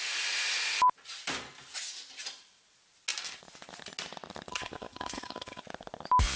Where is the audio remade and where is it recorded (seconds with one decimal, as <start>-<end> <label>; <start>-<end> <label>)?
0.0-4.5 recorded; 4.5-5.6 remade; 5.6-6.4 recorded